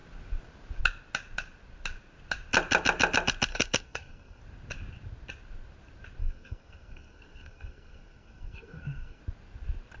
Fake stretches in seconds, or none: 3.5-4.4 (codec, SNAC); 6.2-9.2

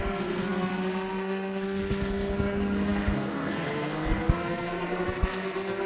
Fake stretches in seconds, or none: 0.0-5.9 (codec, SNAC)